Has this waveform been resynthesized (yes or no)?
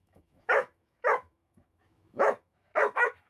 yes